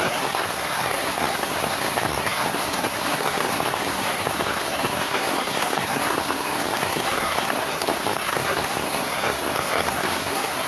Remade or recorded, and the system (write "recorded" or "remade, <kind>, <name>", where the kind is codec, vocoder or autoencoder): remade, codec, SNAC